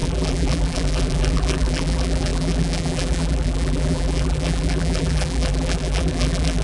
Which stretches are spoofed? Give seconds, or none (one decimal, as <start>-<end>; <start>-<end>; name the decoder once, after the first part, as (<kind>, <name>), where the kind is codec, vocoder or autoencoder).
0.0-6.6 (vocoder, BigVGAN v2)